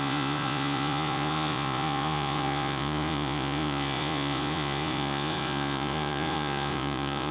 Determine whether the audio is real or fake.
fake